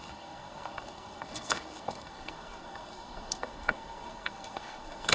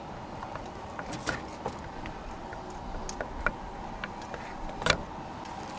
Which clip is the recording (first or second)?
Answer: second